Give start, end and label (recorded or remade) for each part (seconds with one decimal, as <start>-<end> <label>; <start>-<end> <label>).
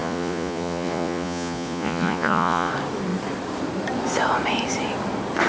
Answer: 0.0-2.7 remade; 2.7-5.5 recorded